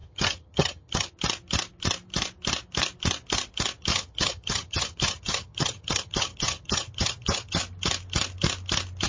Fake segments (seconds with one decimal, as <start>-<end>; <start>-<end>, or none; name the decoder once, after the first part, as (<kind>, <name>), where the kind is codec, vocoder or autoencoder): 0.0-1.1 (vocoder, HiFi-GAN); 3.9-7.6